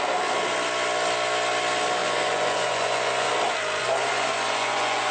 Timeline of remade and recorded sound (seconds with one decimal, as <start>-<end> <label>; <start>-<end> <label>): 0.0-2.0 recorded; 2.0-3.3 remade; 3.3-3.8 recorded; 3.8-5.1 remade